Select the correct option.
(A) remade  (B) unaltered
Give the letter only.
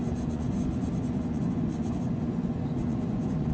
A